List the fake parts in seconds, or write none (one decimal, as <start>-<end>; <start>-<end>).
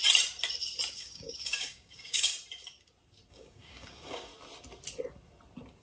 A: 0.9-2.3; 3.3-4.3